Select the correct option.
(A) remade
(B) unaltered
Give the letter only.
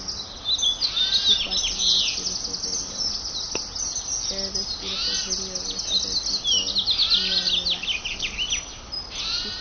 B